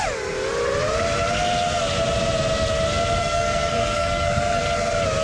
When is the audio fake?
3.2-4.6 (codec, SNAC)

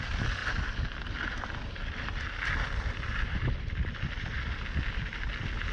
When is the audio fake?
none